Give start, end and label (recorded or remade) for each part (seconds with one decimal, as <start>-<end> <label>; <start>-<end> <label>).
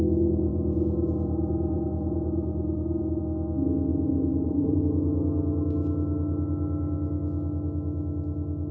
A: 0.0-0.5 recorded; 0.5-3.2 remade; 3.2-3.9 recorded; 3.9-4.8 remade; 4.8-8.7 recorded